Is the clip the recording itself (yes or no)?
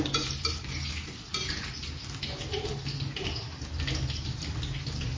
yes